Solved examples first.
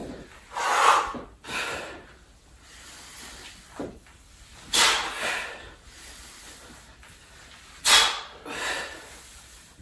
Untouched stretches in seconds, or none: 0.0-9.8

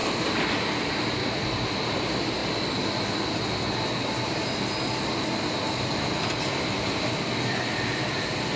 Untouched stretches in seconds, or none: 0.0-8.6

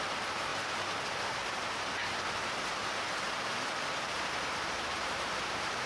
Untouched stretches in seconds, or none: 0.5-4.0

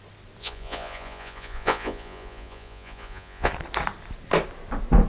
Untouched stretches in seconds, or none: 0.0-0.4; 3.5-5.1

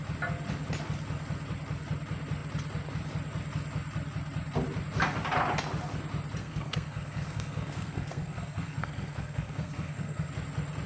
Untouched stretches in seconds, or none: 0.0-6.4; 10.3-10.9

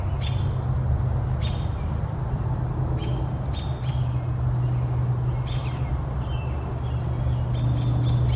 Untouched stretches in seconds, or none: 0.0-8.4